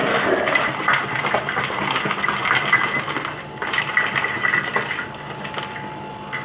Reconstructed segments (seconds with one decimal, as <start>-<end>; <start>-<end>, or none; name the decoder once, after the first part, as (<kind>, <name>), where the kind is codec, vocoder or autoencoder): none